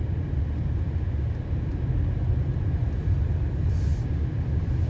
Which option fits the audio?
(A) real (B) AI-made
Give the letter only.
A